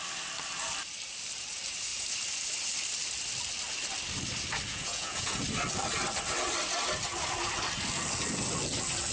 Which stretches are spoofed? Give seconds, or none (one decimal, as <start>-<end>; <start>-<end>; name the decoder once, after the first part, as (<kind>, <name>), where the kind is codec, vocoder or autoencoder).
4.7-5.4 (vocoder, Vocos)